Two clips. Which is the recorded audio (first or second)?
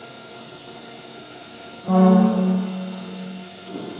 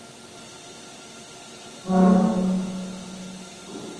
second